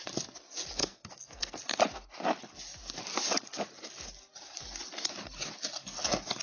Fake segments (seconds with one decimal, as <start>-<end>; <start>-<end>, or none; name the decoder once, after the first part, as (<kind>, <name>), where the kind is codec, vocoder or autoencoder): 0.8-1.8 (codec, SNAC)